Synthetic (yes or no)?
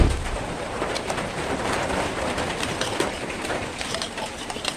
yes